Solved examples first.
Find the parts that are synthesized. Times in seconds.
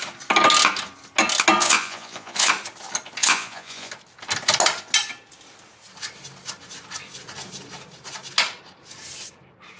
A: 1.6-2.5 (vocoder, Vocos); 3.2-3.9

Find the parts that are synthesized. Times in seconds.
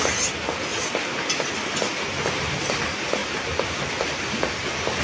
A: none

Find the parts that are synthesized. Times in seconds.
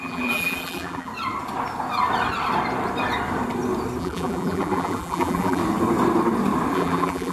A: 0.0-1.1 (vocoder, BigVGAN v2); 4.0-5.6; 6.7-7.3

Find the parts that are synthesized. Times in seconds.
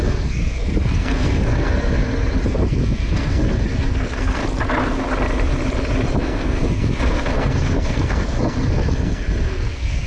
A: 0.0-2.0 (codec, SNAC); 2.5-4.4; 6.2-10.1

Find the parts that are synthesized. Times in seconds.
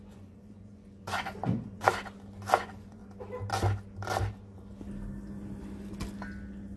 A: 0.0-1.9 (vocoder, Vocos); 2.6-3.0